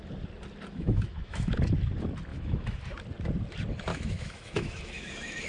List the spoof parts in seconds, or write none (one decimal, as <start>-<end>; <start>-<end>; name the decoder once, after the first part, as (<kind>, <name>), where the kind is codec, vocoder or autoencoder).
0.7-1.5 (autoencoder, DAC-VAE); 2.3-2.8; 3.9-5.5